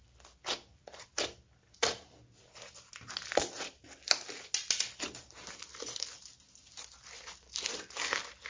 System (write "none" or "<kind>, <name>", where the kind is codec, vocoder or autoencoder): none